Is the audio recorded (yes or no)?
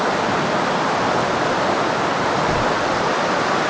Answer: yes